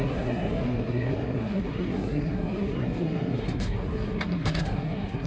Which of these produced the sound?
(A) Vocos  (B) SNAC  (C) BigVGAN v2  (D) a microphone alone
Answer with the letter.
B